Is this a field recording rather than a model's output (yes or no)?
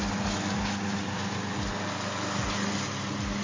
yes